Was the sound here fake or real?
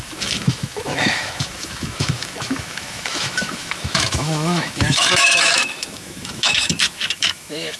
fake